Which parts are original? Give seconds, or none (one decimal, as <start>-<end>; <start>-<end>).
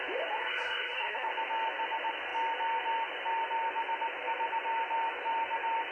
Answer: 0.0-0.4; 1.3-5.9